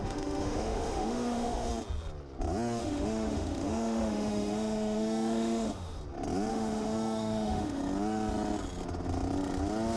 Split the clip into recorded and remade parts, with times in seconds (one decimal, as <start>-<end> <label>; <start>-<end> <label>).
0.0-1.7 remade; 1.7-2.8 recorded; 2.8-6.0 remade; 6.0-6.5 recorded; 6.5-7.8 remade; 7.8-10.0 recorded